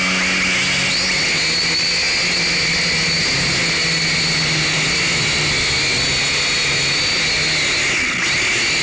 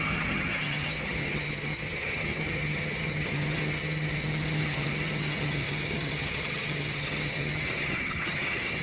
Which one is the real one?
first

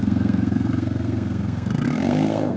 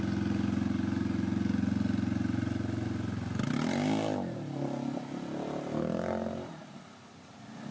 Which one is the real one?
second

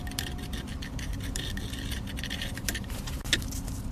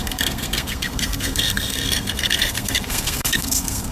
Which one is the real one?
first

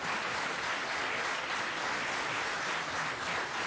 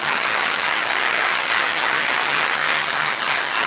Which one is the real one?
first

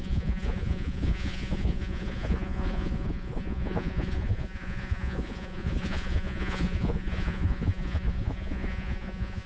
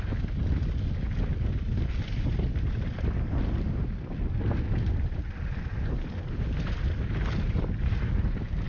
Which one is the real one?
second